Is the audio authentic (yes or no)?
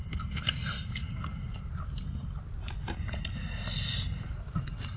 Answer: yes